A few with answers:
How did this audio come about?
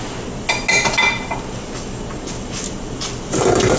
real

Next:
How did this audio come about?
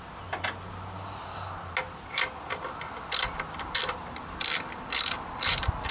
real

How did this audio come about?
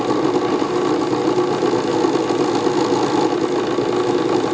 real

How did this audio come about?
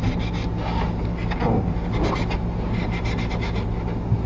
real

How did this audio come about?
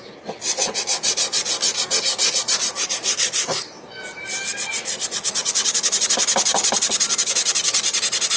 real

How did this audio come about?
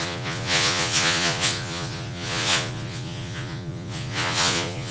fake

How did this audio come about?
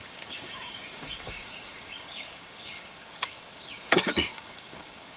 fake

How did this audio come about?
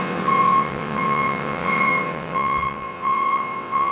fake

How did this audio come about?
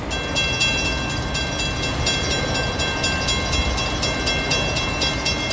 real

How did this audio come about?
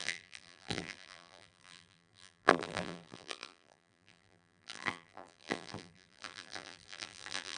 fake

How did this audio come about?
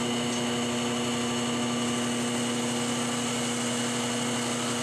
real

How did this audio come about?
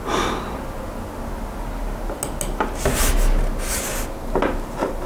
real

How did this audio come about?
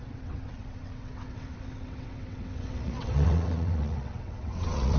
fake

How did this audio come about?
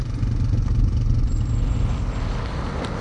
real